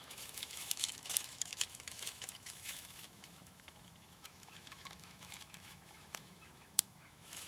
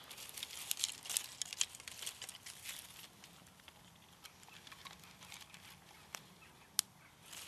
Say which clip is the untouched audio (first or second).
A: second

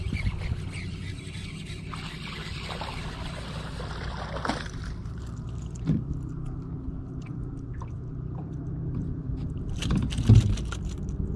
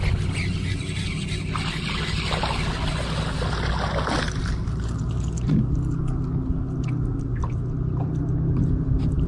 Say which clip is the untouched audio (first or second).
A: second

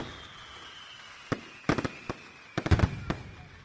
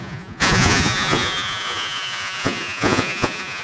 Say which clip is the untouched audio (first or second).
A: first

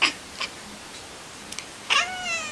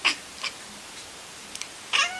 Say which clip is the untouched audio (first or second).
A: first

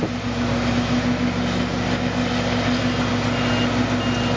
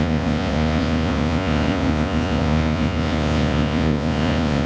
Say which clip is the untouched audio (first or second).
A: first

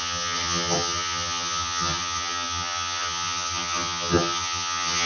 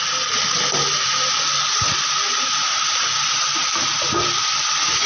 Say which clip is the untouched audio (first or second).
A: second